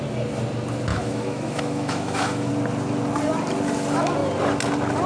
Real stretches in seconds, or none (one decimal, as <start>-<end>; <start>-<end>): 0.0-0.9; 2.5-5.1